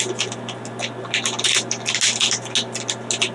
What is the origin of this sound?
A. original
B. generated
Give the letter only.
A